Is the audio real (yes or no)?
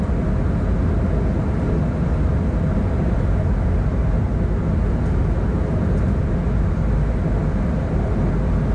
yes